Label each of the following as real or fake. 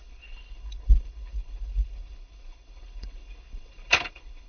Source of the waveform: fake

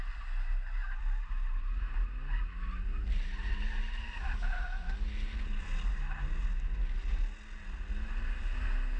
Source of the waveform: real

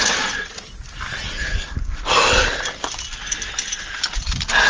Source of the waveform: real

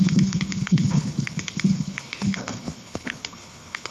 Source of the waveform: fake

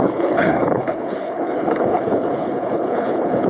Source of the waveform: fake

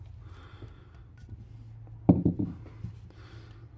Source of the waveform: real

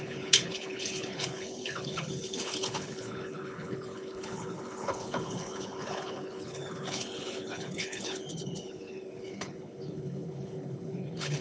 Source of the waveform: fake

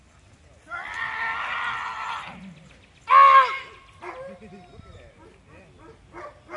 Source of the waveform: real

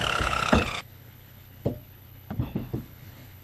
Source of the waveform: fake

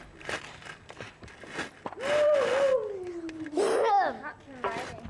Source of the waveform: real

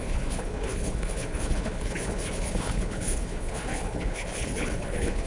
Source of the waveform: fake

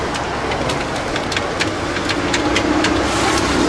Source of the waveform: real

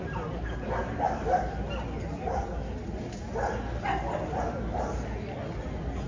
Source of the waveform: real